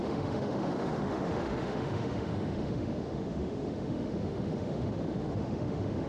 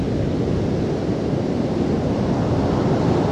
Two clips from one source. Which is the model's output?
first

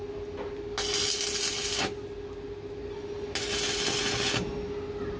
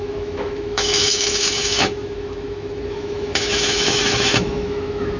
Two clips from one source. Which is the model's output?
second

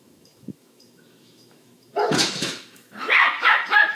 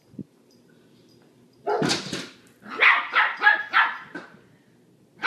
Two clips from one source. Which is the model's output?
first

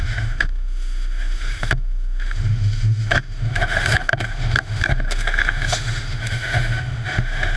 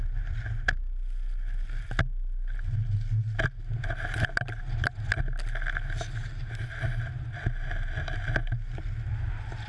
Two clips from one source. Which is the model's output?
first